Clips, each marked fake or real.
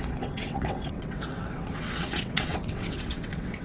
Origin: fake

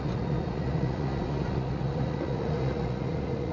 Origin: fake